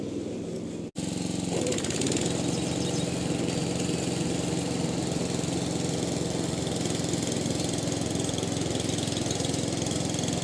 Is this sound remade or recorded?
recorded